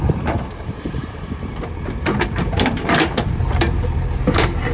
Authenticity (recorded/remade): remade